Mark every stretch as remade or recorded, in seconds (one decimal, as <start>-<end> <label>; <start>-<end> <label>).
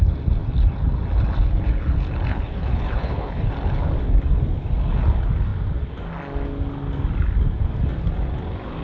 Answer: 0.0-2.3 recorded; 2.3-3.5 remade; 3.5-8.8 recorded